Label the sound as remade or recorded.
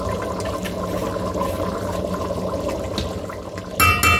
recorded